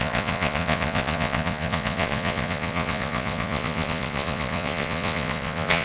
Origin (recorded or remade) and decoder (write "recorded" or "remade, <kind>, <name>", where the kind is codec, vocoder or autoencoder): remade, vocoder, Vocos